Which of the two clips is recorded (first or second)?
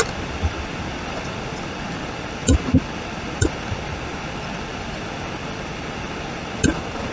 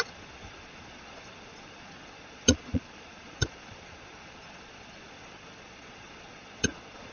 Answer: first